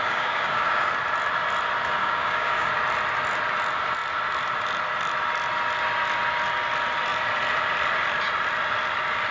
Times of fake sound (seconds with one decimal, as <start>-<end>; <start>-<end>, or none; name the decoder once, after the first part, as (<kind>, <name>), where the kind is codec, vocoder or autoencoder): 0.0-0.9 (codec, DAC); 2.0-2.7